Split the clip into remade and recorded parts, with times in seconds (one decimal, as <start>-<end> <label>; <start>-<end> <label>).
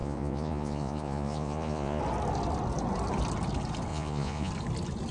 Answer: 0.0-2.0 remade; 2.0-3.9 recorded; 3.9-4.5 remade; 4.5-5.1 recorded